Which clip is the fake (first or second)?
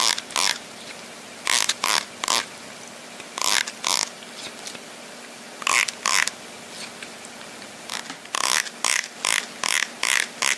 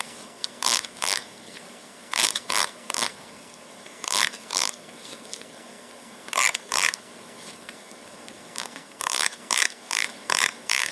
second